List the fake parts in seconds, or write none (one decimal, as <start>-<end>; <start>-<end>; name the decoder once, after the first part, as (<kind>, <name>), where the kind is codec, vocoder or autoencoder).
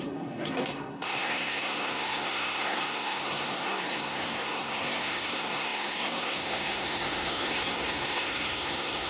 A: 0.0-9.1 (codec, SNAC)